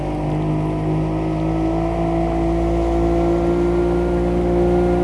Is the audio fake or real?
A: real